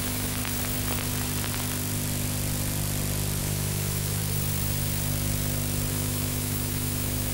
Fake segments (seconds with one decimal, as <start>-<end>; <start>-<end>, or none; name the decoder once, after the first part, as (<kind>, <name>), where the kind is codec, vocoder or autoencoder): 0.0-0.4 (autoencoder, DAC-VAE); 3.4-4.2; 5.9-7.3